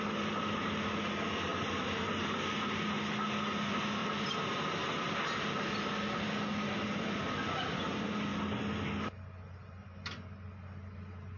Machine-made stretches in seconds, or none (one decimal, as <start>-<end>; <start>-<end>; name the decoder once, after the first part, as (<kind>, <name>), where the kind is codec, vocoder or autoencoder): none